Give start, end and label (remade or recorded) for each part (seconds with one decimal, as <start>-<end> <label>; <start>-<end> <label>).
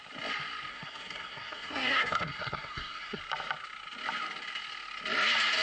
0.0-0.7 recorded; 0.7-3.2 remade; 3.2-5.6 recorded